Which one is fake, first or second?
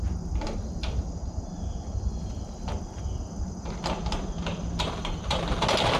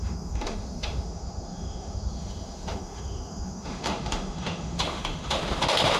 second